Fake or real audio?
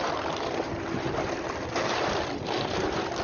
real